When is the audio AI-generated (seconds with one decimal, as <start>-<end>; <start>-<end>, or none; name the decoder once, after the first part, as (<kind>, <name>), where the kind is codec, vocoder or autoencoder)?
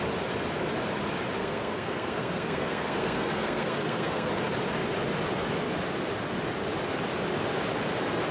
1.4-4.3 (codec, SNAC)